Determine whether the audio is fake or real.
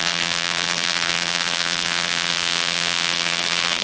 fake